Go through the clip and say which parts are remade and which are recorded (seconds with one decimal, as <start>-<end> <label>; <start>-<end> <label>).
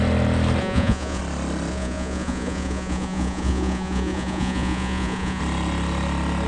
0.0-0.6 recorded; 0.6-1.2 remade; 1.2-1.7 recorded; 1.7-5.4 remade; 5.4-6.5 recorded